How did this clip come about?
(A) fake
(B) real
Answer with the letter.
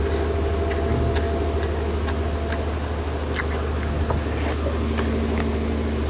B